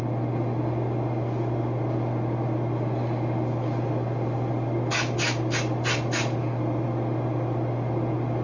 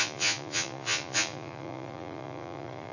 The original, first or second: first